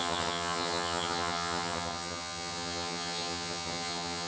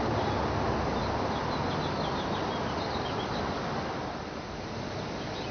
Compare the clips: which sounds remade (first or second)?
first